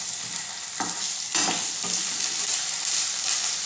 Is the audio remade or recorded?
recorded